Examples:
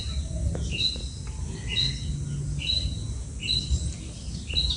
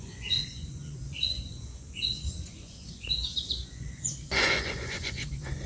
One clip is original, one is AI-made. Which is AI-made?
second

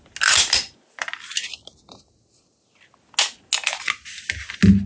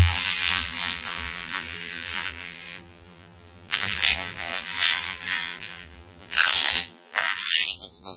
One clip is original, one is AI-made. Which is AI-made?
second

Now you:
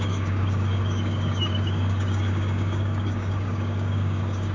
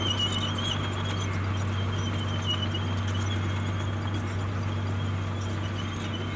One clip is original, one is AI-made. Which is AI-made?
first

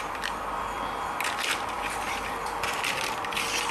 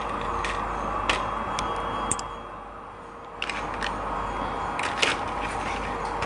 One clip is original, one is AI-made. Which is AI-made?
first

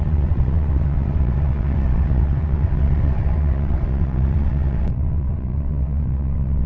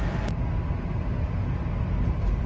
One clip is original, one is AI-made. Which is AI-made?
first